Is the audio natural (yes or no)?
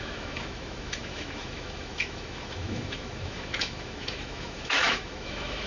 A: no